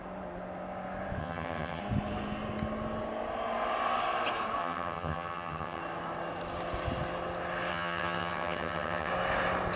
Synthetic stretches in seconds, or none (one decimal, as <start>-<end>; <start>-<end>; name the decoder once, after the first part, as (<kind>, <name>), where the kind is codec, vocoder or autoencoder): 1.2-1.8 (vocoder, HiFi-GAN); 4.6-5.8; 7.7-9.1